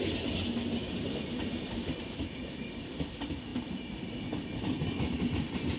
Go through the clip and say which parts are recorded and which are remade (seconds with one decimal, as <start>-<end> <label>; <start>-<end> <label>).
0.0-0.8 recorded; 0.8-3.1 remade; 3.1-3.5 recorded; 3.5-4.2 remade; 4.2-5.8 recorded